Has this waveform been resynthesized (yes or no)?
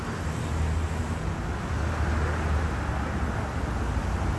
no